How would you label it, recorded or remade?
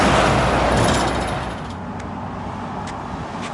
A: recorded